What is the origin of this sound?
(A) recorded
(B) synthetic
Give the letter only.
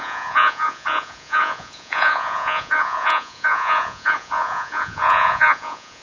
B